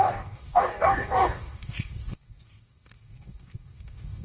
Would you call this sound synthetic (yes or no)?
yes